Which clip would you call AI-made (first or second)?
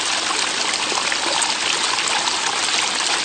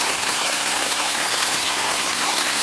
second